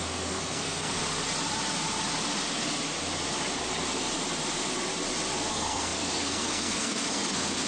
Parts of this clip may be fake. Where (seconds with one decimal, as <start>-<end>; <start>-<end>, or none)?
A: 0.0-1.0; 5.5-7.7